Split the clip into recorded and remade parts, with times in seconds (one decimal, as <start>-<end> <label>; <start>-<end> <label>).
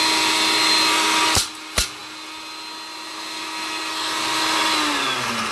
0.0-5.5 recorded